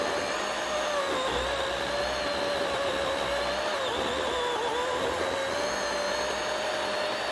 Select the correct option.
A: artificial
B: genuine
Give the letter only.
B